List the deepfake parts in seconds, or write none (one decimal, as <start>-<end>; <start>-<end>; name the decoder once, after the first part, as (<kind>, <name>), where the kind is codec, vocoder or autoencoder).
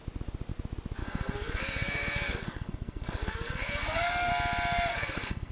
1.0-4.3 (codec, SNAC); 4.9-5.5